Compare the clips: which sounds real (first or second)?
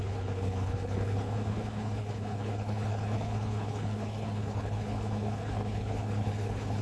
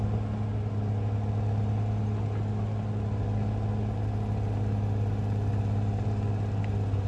second